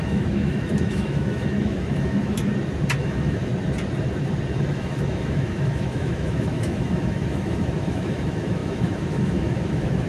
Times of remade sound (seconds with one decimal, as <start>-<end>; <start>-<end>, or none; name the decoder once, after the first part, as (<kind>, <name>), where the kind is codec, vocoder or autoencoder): 0.0-2.5 (autoencoder, DAC-VAE); 3.0-3.5; 4.6-10.1